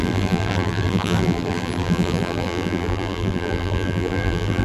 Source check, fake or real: fake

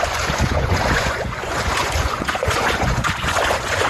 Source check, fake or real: fake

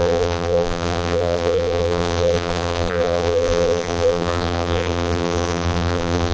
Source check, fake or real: fake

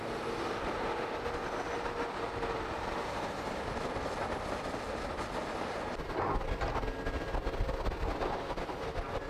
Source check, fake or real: real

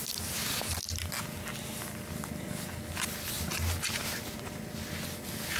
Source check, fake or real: real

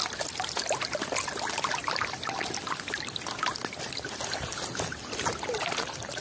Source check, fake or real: real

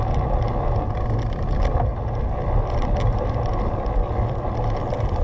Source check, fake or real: real